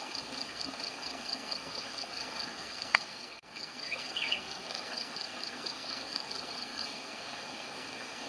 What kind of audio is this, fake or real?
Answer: fake